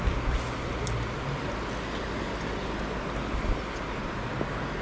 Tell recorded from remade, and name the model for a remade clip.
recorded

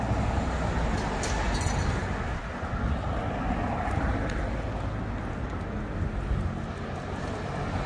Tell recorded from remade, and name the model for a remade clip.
recorded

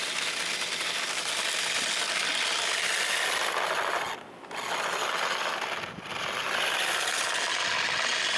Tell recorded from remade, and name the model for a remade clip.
recorded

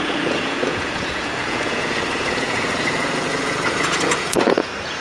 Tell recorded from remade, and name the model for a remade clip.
remade, vocoder, Vocos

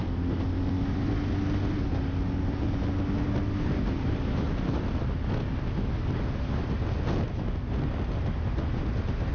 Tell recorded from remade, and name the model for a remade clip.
recorded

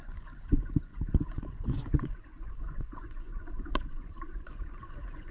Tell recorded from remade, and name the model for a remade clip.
remade, vocoder, Vocos